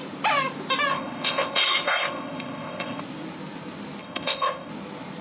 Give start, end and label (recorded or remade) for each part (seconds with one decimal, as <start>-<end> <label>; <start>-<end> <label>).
0.0-0.9 recorded; 0.9-3.0 remade; 3.0-4.0 recorded; 4.0-4.7 remade; 4.7-5.2 recorded